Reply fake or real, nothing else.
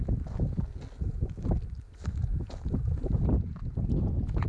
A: real